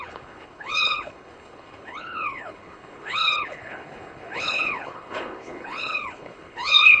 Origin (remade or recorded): remade